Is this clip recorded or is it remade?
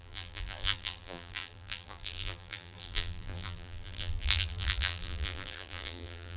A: remade